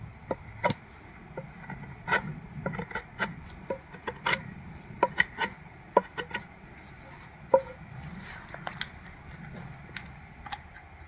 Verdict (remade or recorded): recorded